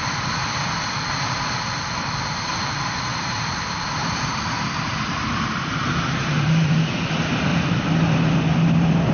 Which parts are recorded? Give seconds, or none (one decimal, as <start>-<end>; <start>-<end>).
0.0-3.1; 6.8-7.5; 8.0-9.1